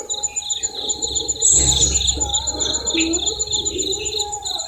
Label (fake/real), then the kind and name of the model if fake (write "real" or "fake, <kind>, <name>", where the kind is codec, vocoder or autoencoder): fake, vocoder, BigVGAN v2